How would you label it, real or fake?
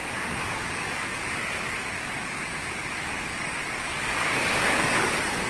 fake